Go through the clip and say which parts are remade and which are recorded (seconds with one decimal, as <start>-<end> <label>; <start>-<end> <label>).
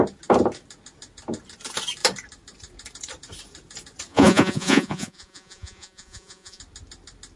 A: 0.0-4.1 recorded; 4.1-6.6 remade; 6.6-7.4 recorded